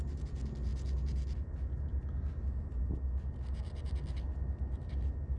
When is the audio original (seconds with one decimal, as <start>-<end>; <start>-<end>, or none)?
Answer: 0.0-5.4